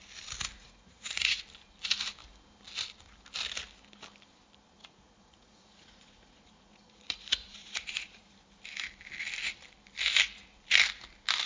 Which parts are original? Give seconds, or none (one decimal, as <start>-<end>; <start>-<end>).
0.0-0.6; 1.4-4.8; 8.3-11.5